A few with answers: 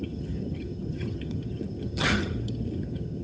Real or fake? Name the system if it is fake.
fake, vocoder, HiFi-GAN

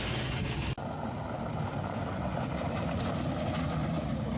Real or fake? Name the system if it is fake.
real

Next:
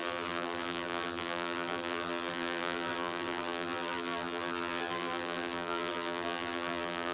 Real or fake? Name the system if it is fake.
fake, vocoder, BigVGAN v2